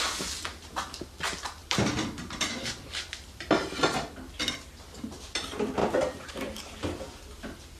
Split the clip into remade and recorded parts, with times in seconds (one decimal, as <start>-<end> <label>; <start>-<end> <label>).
0.0-1.6 recorded; 1.6-3.5 remade; 3.5-5.8 recorded; 5.8-6.3 remade; 6.3-7.8 recorded